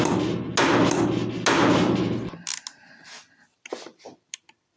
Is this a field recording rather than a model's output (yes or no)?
yes